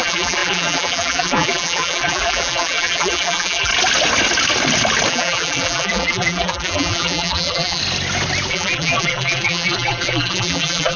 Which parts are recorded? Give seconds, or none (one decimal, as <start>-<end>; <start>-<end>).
3.7-5.1; 7.8-8.5